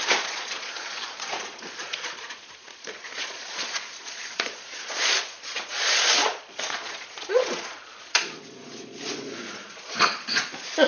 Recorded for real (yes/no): no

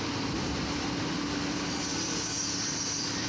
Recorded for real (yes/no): yes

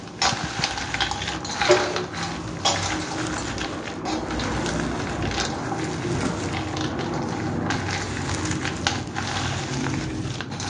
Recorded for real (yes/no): yes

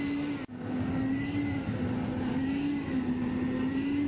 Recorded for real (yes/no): yes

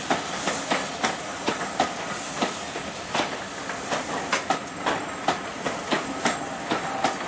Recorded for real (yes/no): yes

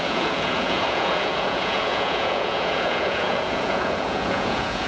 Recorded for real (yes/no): no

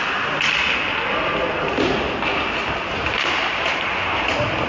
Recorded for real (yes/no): yes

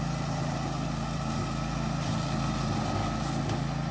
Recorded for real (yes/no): yes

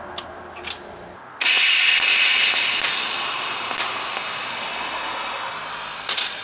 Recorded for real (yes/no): yes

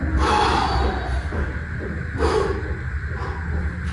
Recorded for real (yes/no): yes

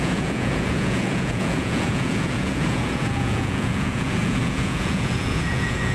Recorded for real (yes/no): no